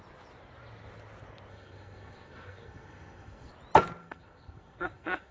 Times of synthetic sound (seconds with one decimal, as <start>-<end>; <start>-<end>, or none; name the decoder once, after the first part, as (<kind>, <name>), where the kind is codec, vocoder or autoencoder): 1.5-3.5 (codec, SNAC); 4.0-5.3

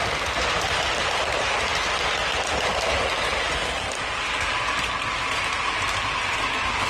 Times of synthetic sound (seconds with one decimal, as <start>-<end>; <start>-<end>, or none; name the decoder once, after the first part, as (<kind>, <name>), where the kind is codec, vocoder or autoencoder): none